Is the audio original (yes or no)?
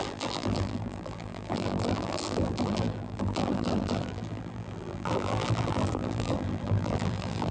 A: no